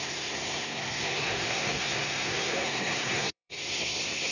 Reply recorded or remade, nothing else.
remade